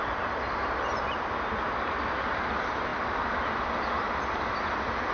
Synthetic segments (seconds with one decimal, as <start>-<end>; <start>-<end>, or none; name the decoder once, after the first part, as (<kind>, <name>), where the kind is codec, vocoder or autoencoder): none